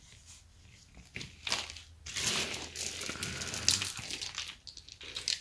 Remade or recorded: recorded